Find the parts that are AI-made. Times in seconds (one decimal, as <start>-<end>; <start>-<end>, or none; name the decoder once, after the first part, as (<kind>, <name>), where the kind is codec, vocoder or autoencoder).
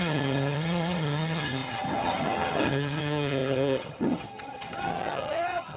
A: 0.0-5.8 (vocoder, HiFi-GAN)